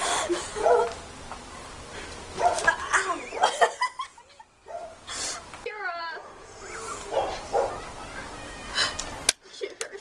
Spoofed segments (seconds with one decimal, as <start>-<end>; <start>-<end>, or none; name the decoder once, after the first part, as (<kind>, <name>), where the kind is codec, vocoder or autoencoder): none